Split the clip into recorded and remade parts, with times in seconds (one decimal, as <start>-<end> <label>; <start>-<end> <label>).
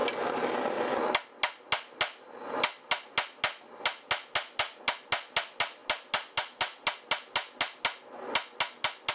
0.0-9.1 recorded